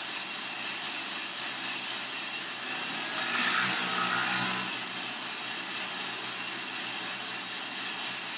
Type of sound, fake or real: real